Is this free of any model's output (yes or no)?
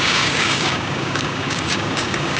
no